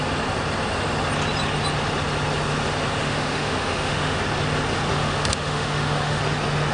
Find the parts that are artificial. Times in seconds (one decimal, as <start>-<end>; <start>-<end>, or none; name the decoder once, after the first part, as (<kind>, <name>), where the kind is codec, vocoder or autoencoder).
3.0-4.2 (autoencoder, DAC-VAE); 4.9-6.2